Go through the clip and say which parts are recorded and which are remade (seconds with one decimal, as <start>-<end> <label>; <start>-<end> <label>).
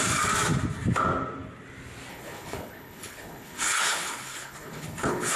0.0-2.1 recorded; 2.1-5.4 remade